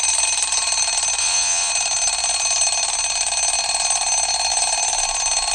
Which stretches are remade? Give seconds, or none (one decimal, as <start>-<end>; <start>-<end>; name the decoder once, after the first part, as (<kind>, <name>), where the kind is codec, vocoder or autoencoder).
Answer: 1.2-1.7 (vocoder, WaveNeXt)